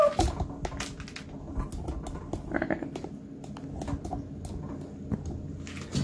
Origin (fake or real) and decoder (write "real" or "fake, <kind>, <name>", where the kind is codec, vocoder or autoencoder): real